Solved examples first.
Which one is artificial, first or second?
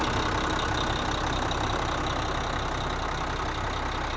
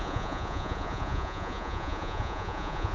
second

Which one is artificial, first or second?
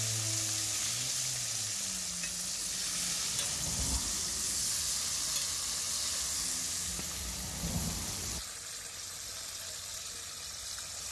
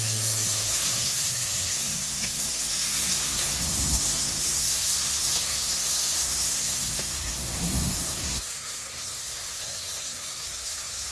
second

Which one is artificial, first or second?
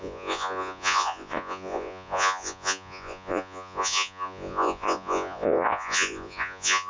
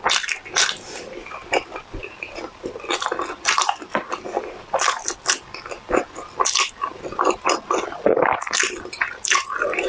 first